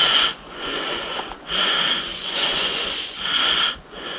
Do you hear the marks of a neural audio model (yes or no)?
yes